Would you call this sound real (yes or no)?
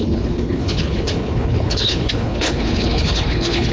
no